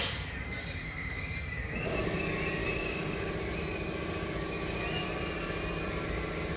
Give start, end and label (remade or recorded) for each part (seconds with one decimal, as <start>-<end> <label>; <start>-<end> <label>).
0.0-0.6 recorded; 0.6-2.0 remade; 2.0-2.6 recorded; 2.6-3.3 remade; 3.3-6.6 recorded